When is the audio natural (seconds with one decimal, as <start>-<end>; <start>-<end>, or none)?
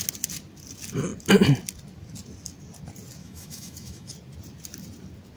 0.0-3.2; 4.1-5.4